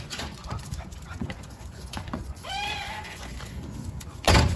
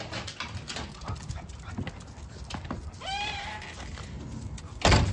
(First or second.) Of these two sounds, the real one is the second